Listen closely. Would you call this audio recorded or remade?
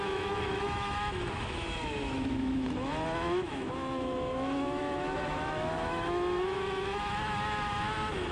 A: remade